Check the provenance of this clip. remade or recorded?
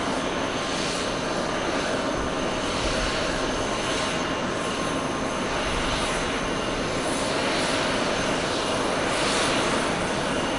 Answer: recorded